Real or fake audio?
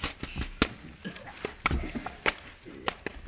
real